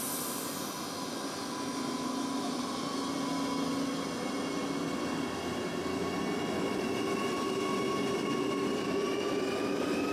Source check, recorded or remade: recorded